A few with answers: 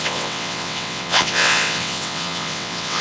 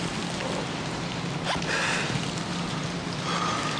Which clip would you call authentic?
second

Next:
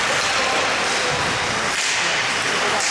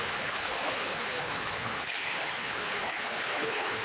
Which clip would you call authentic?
first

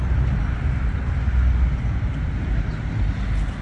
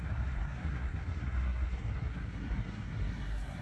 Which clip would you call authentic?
first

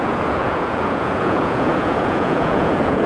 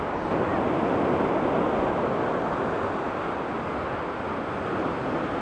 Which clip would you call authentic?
second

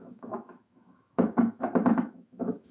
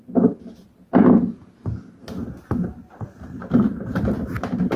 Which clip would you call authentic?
second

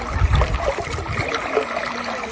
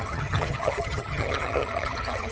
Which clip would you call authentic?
first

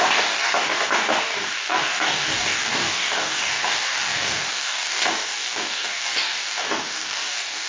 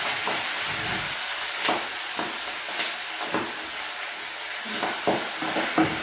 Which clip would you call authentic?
second